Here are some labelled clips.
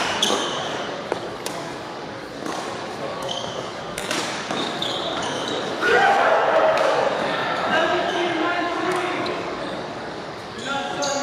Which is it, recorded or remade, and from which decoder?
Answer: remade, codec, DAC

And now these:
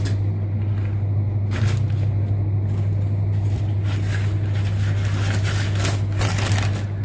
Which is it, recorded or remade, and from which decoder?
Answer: recorded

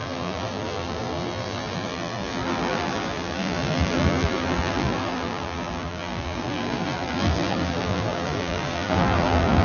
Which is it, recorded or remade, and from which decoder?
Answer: remade, vocoder, BigVGAN v2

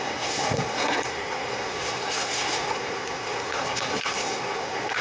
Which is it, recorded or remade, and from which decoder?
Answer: remade, codec, SNAC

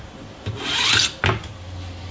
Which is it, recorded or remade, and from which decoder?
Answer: recorded